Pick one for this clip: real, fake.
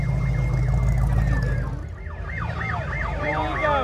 real